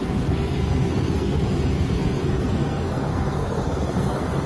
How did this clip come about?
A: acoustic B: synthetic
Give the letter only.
B